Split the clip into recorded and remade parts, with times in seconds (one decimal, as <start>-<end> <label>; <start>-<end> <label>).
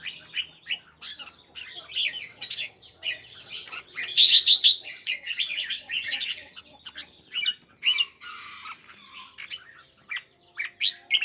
0.0-2.3 recorded; 2.3-6.6 remade; 6.6-11.2 recorded